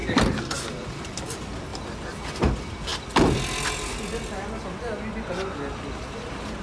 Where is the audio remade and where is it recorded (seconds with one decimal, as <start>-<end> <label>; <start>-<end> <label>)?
0.0-6.6 recorded